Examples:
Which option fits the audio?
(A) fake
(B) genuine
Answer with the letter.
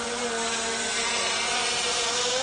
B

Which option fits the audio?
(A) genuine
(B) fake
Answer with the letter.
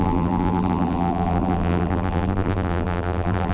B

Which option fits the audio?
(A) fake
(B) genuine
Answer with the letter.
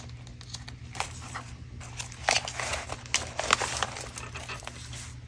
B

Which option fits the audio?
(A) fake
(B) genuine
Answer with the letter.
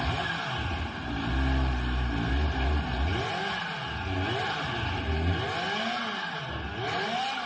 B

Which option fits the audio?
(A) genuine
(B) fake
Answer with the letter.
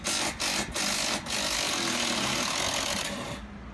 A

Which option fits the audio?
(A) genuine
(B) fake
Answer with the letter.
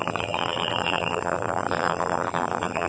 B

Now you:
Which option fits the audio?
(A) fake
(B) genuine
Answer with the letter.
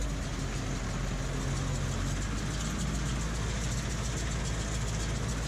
B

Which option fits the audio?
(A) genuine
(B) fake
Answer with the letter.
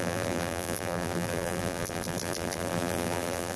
B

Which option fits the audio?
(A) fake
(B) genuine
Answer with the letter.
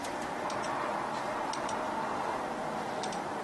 A